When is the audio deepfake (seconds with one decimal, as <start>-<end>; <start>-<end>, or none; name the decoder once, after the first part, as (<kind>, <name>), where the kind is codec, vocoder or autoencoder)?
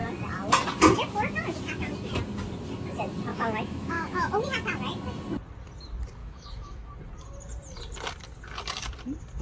3.3-4.3 (autoencoder, DAC-VAE); 6.2-6.9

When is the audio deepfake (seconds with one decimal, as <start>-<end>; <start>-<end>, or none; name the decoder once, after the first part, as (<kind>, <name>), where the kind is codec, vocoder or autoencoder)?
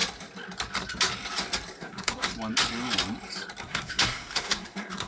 1.8-2.3 (codec, SNAC); 3.6-5.1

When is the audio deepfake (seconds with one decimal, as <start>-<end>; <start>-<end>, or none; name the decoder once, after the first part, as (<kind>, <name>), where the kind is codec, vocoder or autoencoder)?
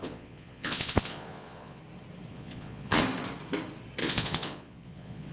0.0-1.8 (vocoder, Vocos); 2.3-3.0; 4.0-5.3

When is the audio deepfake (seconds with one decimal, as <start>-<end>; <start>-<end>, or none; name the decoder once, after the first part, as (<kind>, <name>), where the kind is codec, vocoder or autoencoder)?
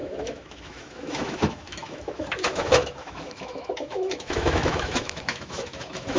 0.0-6.2 (autoencoder, DAC-VAE)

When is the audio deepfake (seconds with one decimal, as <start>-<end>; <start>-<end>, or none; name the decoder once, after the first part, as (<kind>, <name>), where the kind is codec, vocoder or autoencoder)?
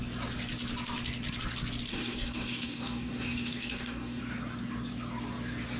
1.9-4.2 (codec, DAC)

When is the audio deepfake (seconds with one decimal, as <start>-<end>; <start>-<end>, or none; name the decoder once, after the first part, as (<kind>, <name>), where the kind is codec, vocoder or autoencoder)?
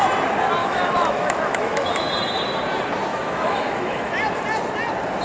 0.6-2.1 (autoencoder, DAC-VAE); 3.1-4.1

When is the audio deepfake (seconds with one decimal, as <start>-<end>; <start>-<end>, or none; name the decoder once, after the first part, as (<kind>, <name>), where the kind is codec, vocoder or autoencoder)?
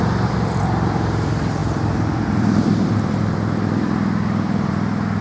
0.0-5.2 (vocoder, BigVGAN v2)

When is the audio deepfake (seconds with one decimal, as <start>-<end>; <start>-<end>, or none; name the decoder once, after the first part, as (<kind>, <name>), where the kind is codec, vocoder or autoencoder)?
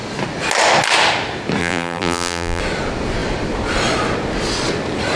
1.6-2.6 (vocoder, BigVGAN v2)